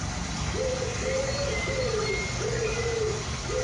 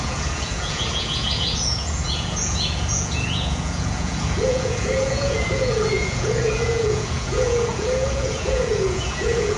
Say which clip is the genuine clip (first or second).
first